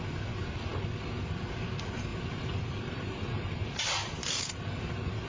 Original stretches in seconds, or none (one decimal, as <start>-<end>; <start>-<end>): 0.0-2.1; 4.4-5.3